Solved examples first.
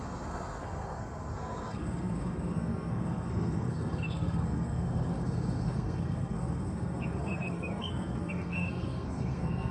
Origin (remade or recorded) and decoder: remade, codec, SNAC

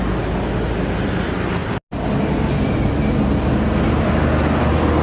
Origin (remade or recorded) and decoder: recorded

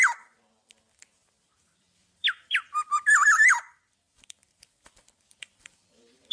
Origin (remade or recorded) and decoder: remade, vocoder, BigVGAN v2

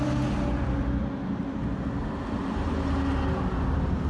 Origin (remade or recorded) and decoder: recorded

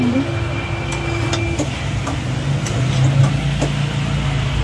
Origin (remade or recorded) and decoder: recorded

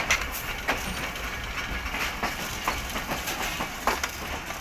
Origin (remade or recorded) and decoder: recorded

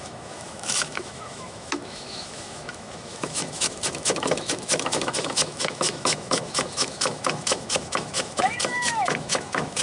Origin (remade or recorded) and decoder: remade, autoencoder, DAC-VAE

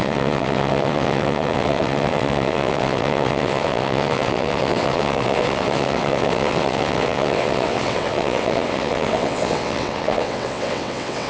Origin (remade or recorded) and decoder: remade, vocoder, WaveNeXt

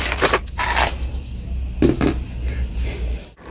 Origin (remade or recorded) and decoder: recorded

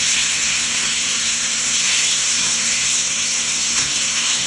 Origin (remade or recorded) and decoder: remade, codec, SNAC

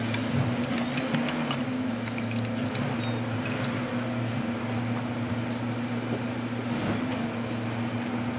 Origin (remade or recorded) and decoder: recorded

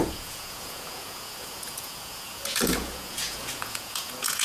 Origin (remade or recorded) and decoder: remade, vocoder, Vocos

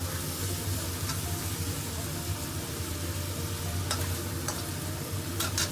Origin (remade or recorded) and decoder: recorded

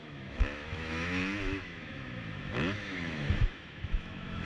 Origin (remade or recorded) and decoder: remade, autoencoder, DAC-VAE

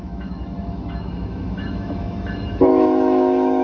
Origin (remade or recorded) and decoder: remade, autoencoder, DAC-VAE